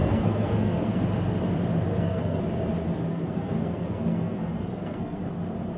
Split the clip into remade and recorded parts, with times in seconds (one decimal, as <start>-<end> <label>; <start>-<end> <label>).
0.0-1.0 remade; 1.0-1.9 recorded; 1.9-2.4 remade; 2.4-3.1 recorded; 3.1-5.3 remade; 5.3-5.8 recorded